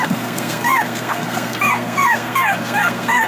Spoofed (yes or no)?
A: yes